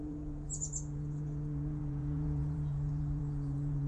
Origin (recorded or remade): remade